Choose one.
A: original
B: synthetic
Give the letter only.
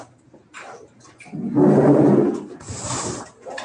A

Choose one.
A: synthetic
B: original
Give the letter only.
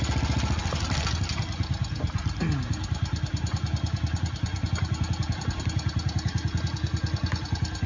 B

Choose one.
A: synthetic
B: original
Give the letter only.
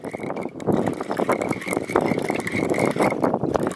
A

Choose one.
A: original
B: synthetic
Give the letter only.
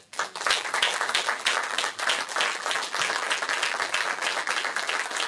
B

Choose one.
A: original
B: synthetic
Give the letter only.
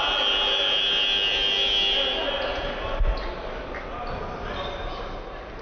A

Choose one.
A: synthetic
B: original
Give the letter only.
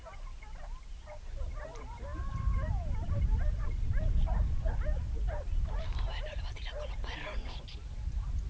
A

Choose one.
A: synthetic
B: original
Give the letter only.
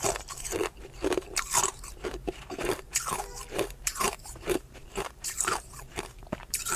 A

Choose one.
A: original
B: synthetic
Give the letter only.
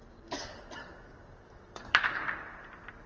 B